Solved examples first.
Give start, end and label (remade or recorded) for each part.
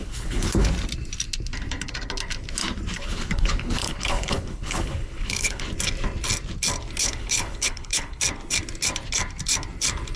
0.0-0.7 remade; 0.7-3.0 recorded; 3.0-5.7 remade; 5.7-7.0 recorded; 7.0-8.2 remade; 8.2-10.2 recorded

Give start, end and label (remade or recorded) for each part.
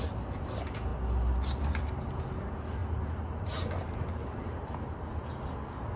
0.0-6.0 recorded